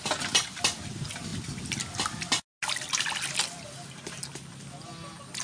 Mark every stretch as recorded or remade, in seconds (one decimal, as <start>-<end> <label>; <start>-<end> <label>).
0.0-5.4 recorded